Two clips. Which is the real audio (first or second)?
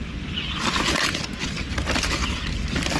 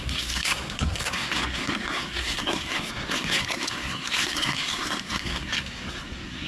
first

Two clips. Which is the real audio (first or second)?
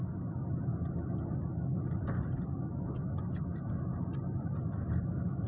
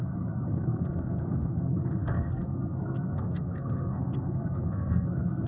first